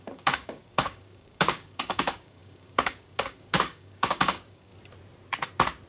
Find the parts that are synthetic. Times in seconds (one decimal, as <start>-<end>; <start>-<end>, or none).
0.0-4.7